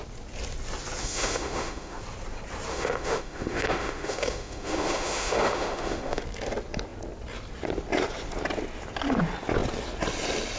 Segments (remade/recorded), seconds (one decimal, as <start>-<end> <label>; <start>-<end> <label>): 0.0-1.0 recorded; 1.0-2.0 remade; 2.0-2.7 recorded; 2.7-6.2 remade; 6.2-10.6 recorded